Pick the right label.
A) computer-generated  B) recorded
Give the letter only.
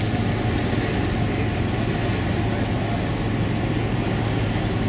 B